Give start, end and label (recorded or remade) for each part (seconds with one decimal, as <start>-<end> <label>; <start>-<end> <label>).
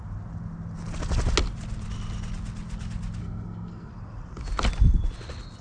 0.0-3.2 recorded; 3.2-3.9 remade; 3.9-5.6 recorded